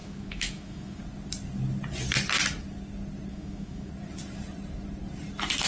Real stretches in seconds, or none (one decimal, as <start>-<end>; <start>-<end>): 1.0-3.3; 3.9-5.7